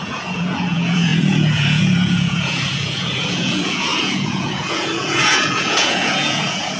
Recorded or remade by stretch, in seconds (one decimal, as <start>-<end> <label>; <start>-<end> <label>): 0.0-6.8 remade